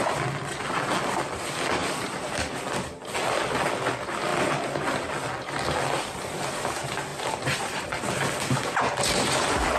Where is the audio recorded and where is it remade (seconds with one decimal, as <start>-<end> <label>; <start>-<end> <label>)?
0.0-1.8 recorded; 1.8-2.5 remade; 2.5-7.1 recorded; 7.1-8.1 remade; 8.1-9.8 recorded